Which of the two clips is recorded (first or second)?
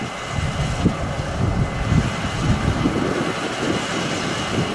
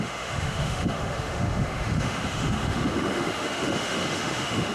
first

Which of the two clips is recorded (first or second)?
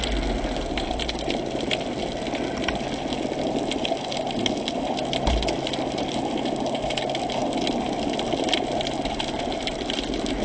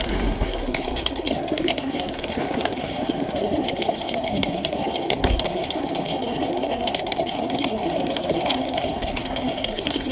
first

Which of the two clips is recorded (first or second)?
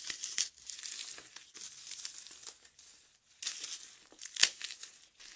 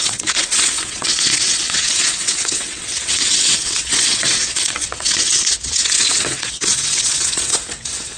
first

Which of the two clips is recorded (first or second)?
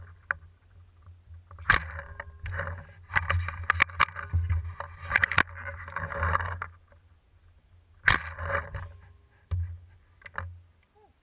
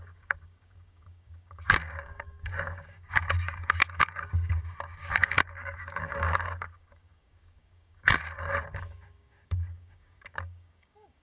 first